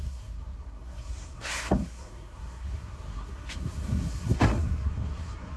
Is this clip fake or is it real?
fake